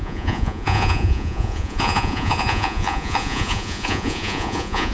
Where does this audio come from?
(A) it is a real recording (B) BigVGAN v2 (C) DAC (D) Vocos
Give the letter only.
D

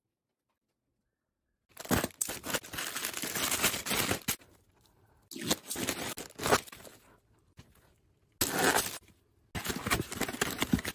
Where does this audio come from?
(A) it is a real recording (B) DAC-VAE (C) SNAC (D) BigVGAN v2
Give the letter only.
A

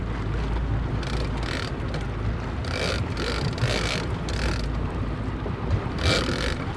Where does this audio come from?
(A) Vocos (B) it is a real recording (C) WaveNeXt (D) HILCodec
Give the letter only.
B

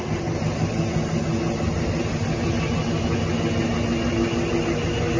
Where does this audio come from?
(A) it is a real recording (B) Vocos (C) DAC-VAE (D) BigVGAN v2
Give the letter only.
A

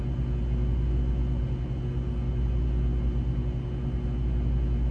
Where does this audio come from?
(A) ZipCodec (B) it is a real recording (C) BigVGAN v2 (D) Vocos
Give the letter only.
B